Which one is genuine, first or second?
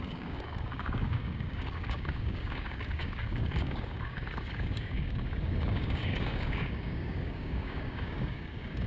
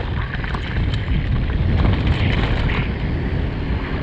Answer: second